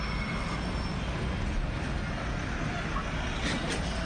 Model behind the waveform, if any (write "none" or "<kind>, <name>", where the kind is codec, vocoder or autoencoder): none